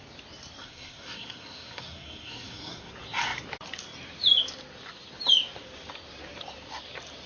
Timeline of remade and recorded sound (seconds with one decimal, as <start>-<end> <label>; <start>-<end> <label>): 0.0-0.6 recorded; 0.6-2.9 remade; 2.9-7.3 recorded